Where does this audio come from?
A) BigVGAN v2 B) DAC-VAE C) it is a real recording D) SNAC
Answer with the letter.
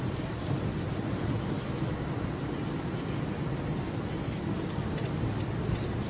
A